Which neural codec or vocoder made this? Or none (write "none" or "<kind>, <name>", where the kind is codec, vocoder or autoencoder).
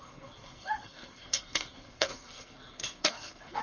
codec, SNAC